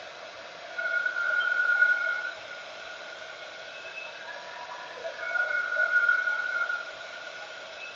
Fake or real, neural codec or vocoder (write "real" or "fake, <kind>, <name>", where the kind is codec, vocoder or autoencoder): real